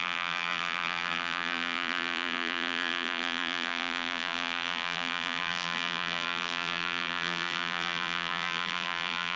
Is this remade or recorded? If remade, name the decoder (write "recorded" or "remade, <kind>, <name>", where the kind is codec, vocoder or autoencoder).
remade, vocoder, BigVGAN v2